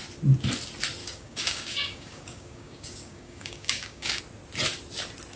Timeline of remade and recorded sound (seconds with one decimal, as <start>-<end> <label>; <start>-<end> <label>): 0.0-1.0 recorded; 1.0-4.2 remade; 4.2-5.4 recorded